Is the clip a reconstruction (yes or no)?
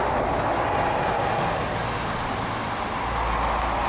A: no